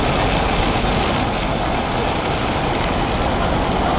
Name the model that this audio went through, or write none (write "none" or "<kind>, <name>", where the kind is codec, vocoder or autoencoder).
none